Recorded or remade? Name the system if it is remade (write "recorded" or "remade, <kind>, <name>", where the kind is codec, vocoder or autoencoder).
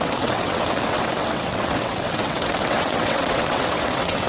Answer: remade, vocoder, WaveNeXt